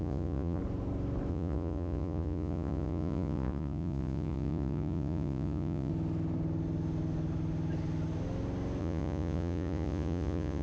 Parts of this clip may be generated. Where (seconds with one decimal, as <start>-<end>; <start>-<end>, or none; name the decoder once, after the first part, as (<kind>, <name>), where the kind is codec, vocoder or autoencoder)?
0.0-0.6 (vocoder, Vocos); 1.3-5.9; 8.8-10.6

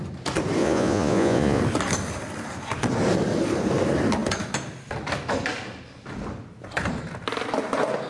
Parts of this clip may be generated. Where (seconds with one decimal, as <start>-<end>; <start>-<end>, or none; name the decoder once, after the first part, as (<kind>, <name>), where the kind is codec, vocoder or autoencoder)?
0.6-1.6 (vocoder, Vocos)

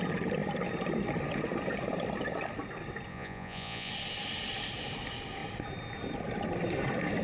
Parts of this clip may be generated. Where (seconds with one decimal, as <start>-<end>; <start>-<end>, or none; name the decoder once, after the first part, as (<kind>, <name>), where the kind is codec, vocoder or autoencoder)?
3.1-3.9 (vocoder, Vocos)

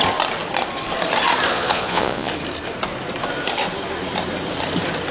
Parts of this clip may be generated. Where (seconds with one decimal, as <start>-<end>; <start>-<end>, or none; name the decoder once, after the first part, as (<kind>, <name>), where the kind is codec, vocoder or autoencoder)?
1.5-2.3 (vocoder, Vocos)

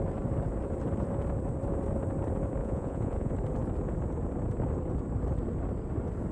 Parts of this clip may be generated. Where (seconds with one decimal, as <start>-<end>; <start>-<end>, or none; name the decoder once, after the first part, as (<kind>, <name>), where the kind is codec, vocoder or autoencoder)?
2.6-3.3 (vocoder, Vocos)

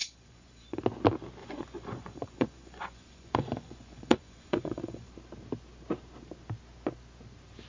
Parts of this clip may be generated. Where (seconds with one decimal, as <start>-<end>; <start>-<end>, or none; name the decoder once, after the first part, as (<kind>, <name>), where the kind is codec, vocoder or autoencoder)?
0.0-0.8 (vocoder, Vocos); 1.4-5.1

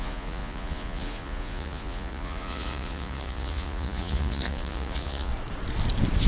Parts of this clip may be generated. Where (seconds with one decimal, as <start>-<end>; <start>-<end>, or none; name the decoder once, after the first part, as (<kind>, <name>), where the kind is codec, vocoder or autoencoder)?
0.0-5.3 (vocoder, Vocos)

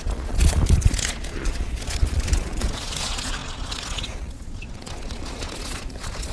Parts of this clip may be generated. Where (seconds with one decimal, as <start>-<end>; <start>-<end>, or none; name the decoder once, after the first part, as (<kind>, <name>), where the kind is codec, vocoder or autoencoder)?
0.0-6.3 (vocoder, Vocos)